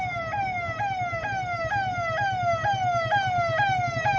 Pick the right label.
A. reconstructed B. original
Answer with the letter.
B